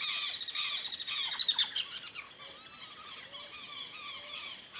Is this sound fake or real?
real